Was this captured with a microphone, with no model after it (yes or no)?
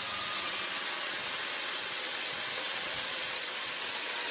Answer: no